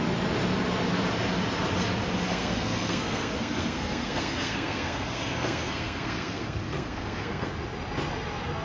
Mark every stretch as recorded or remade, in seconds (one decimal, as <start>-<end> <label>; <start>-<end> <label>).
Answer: 0.0-2.3 recorded; 2.3-7.5 remade; 7.5-8.6 recorded